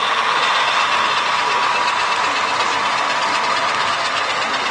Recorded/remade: recorded